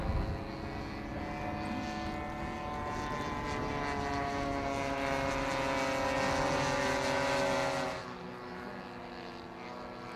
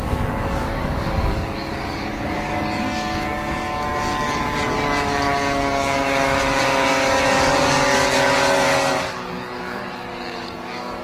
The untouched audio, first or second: first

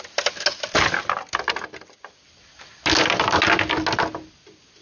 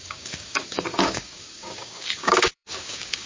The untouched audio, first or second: first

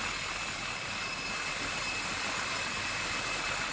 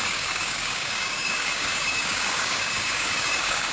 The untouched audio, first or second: first